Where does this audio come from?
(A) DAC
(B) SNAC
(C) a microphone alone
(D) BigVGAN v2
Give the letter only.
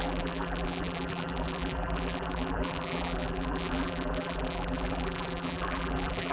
D